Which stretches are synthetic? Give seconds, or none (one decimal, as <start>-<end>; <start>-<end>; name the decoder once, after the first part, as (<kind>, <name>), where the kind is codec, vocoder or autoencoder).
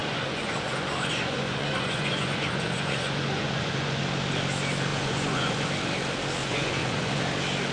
0.0-4.0 (vocoder, Vocos); 4.9-5.7; 6.4-7.2